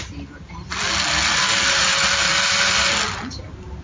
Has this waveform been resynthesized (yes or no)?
no